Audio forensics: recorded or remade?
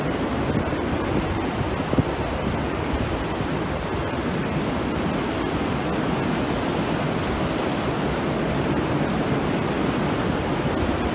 recorded